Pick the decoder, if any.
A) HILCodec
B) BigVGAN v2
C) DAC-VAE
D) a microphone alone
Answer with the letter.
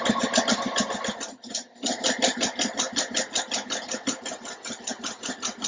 D